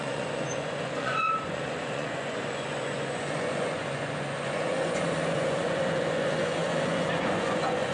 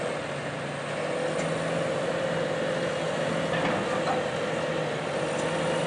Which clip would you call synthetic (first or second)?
first